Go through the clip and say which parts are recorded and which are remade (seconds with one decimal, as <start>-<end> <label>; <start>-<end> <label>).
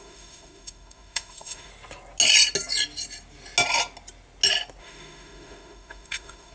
0.0-1.7 remade; 1.7-4.8 recorded; 4.8-6.5 remade